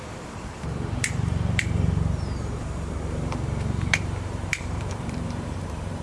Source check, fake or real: fake